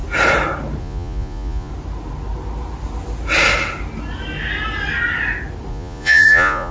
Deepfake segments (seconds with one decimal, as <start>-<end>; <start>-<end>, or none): 0.8-1.7; 5.7-6.7